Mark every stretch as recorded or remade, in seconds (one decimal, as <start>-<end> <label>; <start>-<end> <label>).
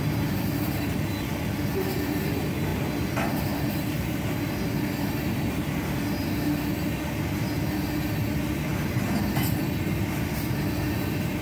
0.0-11.4 recorded